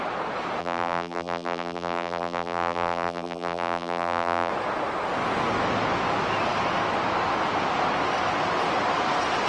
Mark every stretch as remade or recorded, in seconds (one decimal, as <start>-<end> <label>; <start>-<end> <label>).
0.0-0.6 recorded; 0.6-4.5 remade; 4.5-9.5 recorded